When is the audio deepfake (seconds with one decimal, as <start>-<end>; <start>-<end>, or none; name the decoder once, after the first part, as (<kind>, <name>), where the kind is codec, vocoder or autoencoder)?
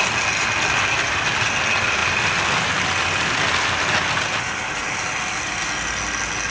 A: none